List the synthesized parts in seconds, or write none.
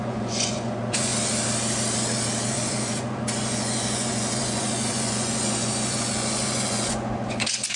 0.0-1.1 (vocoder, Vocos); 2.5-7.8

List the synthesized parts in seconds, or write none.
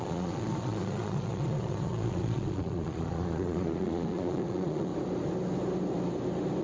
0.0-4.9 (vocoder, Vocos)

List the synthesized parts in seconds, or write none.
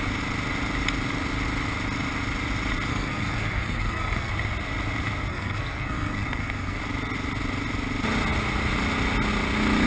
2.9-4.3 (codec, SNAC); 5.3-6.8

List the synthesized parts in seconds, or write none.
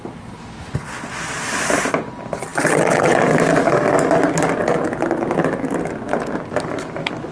none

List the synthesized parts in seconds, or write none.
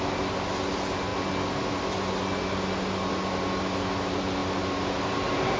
none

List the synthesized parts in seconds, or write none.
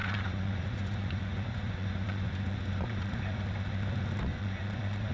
0.0-3.1 (vocoder, Vocos); 4.3-5.1